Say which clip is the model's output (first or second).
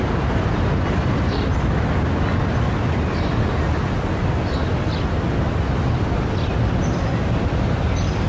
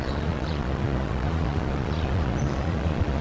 second